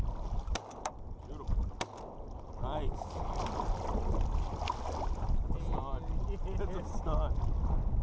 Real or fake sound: real